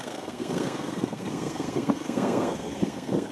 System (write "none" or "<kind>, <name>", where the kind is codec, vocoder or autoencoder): codec, SNAC